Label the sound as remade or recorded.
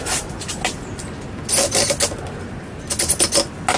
recorded